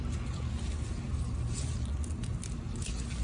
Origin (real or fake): real